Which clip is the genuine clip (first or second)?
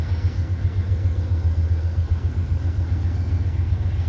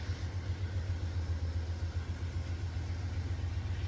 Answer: second